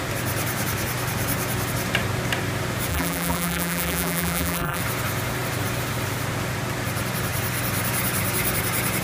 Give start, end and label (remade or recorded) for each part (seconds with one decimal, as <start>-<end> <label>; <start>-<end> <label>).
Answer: 0.0-2.9 recorded; 2.9-4.8 remade; 4.8-9.0 recorded